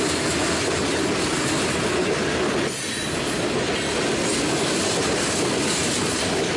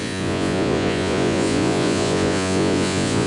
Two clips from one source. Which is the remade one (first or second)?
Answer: second